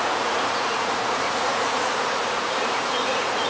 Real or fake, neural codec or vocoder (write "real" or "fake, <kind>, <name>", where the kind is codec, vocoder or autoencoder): fake, vocoder, Vocos